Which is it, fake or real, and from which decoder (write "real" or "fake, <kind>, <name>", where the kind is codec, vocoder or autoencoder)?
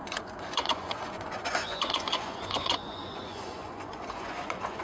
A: fake, vocoder, Vocos